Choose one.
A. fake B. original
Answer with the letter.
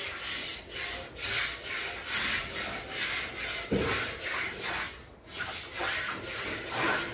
B